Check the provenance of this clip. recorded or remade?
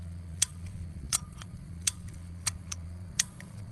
remade